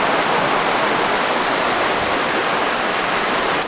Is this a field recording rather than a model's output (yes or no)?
yes